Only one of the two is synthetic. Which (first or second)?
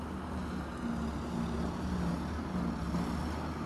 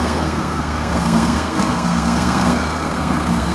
second